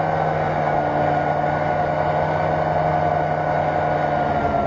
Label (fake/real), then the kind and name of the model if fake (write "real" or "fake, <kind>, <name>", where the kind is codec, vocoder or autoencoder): real